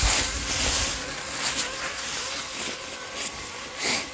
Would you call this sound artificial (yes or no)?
no